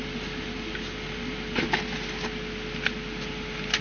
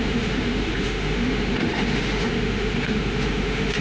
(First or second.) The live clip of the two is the first